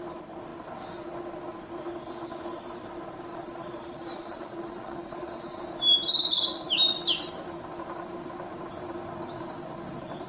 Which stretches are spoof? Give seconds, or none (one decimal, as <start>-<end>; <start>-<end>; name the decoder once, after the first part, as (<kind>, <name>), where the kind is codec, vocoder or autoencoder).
3.3-5.6 (vocoder, Vocos)